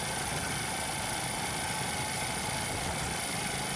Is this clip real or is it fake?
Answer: real